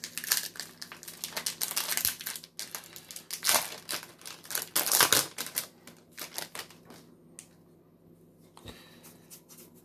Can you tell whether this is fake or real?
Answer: real